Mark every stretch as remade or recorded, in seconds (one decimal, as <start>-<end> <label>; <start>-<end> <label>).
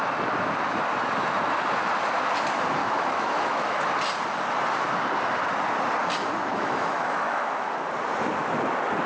0.0-2.8 recorded; 2.8-3.8 remade; 3.8-6.5 recorded; 6.5-7.8 remade; 7.8-9.1 recorded